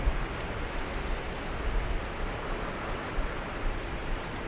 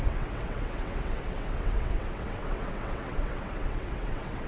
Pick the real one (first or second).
first